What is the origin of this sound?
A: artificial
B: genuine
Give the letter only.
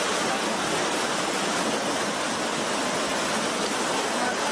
B